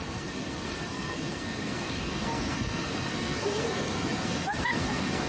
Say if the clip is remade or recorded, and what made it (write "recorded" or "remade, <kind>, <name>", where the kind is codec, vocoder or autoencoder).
remade, codec, SNAC